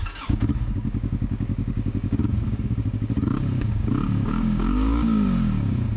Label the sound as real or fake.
fake